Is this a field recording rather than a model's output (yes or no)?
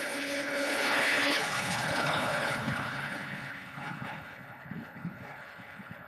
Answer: no